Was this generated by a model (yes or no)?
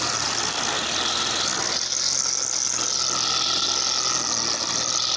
no